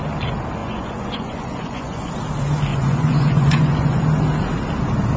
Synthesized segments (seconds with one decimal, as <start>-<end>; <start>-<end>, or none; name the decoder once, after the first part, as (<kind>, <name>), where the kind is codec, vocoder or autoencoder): 0.6-2.1 (vocoder, Vocos); 2.7-4.0